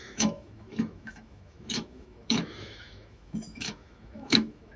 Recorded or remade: remade